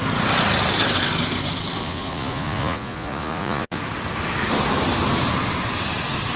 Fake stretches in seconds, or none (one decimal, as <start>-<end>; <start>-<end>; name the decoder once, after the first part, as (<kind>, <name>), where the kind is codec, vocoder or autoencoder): 1.8-3.8 (vocoder, Vocos)